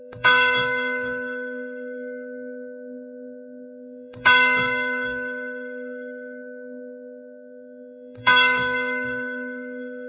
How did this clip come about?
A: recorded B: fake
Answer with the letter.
B